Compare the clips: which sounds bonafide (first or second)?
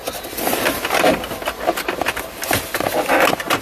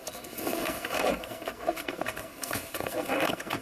first